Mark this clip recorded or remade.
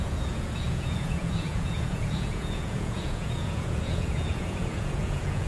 remade